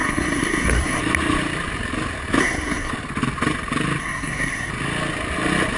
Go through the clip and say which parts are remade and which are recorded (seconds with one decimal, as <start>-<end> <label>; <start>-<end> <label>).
0.0-1.0 remade; 1.0-2.4 recorded; 2.4-2.9 remade; 2.9-4.0 recorded; 4.0-4.7 remade; 4.7-5.8 recorded